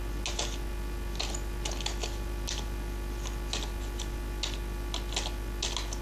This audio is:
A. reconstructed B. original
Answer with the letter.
B